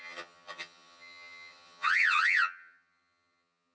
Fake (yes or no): yes